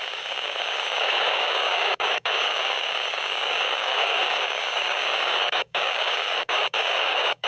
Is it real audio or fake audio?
fake